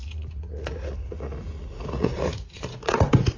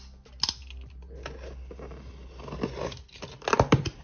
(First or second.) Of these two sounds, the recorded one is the second